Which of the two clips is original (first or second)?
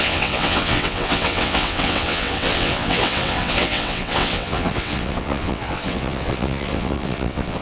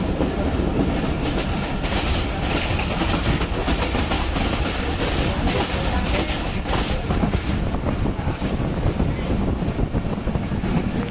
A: second